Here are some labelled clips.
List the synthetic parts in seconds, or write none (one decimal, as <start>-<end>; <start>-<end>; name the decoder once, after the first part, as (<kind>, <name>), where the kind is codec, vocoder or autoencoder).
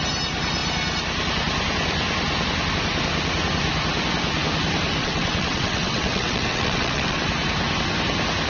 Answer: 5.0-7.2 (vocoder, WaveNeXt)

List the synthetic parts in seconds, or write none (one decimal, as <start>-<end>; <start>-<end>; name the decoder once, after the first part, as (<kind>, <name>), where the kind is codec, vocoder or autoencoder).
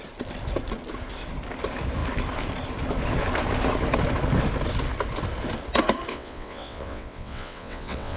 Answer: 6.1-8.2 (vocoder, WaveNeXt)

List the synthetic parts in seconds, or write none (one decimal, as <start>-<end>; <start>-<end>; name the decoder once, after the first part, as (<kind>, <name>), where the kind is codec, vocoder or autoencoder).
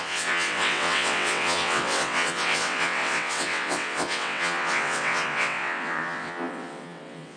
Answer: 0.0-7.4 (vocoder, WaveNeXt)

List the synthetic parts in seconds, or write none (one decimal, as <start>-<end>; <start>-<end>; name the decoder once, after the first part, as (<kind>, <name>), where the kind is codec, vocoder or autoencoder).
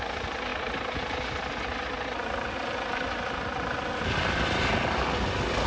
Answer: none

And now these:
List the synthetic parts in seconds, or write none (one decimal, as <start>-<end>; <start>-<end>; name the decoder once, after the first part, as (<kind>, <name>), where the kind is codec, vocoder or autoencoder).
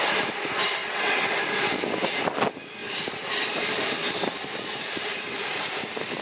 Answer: 0.8-1.3 (vocoder, WaveNeXt)